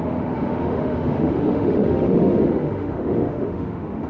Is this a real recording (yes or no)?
no